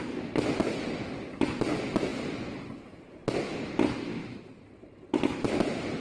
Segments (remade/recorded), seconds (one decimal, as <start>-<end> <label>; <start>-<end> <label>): 0.0-4.2 recorded; 4.2-5.2 remade; 5.2-6.0 recorded